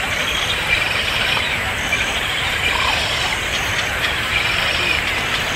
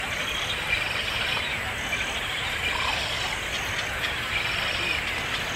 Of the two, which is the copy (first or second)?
first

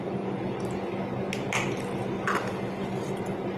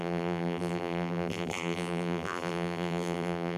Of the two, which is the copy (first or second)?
second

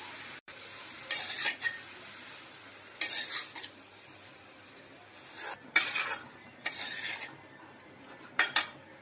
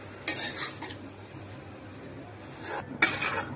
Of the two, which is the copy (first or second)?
first